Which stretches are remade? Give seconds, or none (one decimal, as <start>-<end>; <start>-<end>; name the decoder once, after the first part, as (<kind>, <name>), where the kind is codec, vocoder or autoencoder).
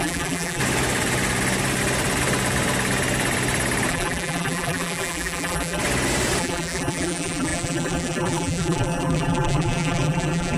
0.0-0.6 (vocoder, BigVGAN v2); 3.9-5.8; 6.4-10.6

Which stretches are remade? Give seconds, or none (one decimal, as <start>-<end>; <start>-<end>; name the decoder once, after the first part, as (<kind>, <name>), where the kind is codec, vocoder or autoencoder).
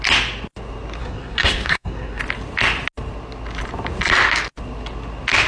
1.0-2.2 (codec, SNAC)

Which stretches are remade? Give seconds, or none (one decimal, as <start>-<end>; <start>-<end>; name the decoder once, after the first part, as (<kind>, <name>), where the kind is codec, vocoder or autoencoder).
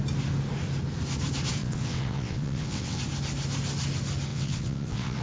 1.6-3.0 (vocoder, WaveNeXt); 4.3-5.2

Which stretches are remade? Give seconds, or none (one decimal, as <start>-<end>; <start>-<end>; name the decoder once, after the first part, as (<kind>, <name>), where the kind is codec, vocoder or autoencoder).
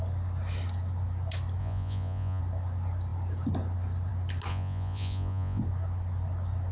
1.6-2.4 (vocoder, Vocos); 4.5-5.6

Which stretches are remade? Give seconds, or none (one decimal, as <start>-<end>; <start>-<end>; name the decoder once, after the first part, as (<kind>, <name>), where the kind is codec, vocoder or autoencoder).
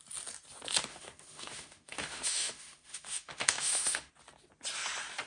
0.9-4.1 (autoencoder, DAC-VAE)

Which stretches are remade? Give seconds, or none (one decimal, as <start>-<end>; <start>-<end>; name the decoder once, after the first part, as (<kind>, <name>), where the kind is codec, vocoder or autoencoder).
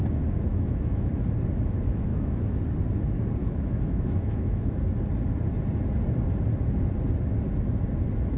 0.5-1.1 (autoencoder, DAC-VAE); 2.1-2.6; 3.4-4.8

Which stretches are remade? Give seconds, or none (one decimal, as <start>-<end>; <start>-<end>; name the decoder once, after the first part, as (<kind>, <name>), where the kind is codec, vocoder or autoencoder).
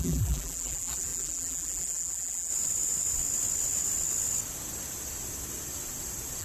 0.0-2.5 (vocoder, BigVGAN v2)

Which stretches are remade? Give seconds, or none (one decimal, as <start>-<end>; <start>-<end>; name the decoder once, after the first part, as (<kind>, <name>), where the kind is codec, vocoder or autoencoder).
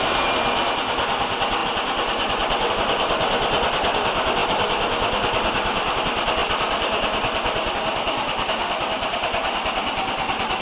6.4-7.7 (vocoder, BigVGAN v2)